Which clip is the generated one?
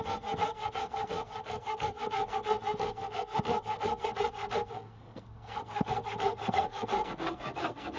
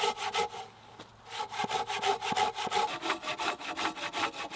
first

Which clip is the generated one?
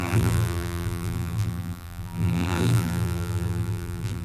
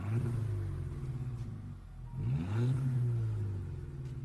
first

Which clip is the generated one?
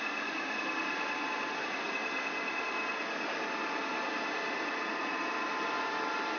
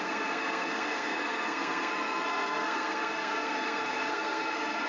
second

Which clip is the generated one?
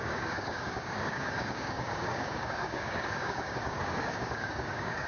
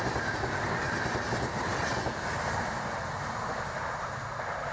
first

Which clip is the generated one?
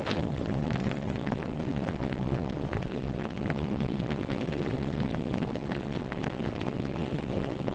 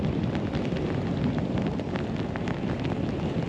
first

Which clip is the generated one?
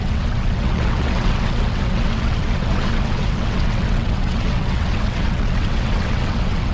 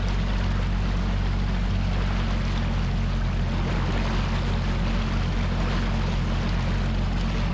first